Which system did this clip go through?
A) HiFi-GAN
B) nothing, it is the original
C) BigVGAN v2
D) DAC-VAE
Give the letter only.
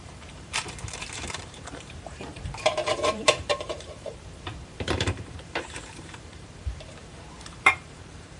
C